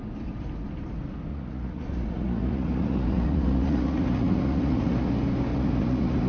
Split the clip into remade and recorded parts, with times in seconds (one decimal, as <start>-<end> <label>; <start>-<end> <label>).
0.0-1.3 recorded; 1.3-5.1 remade; 5.1-5.5 recorded; 5.5-6.3 remade